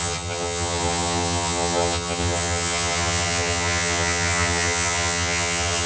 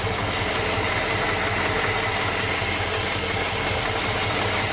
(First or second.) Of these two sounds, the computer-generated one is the first